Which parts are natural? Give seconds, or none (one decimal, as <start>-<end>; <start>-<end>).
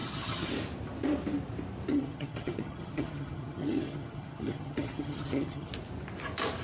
0.5-1.9; 5.7-6.6